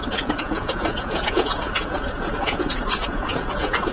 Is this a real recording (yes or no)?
no